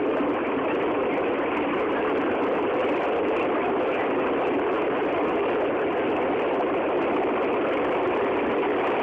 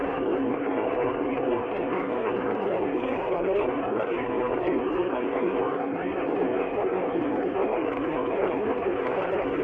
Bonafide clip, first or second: first